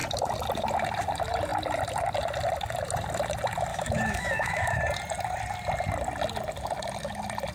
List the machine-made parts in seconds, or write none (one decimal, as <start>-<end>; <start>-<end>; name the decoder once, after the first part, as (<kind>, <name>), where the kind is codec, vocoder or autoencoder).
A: 3.7-4.8 (autoencoder, DAC-VAE)